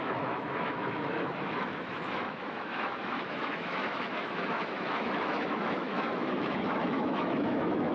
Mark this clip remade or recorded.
remade